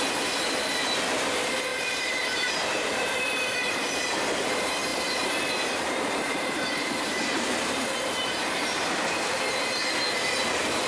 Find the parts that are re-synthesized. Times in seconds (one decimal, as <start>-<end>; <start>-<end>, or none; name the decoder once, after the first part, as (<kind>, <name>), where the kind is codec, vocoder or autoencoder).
1.7-4.1 (vocoder, BigVGAN v2); 4.9-9.4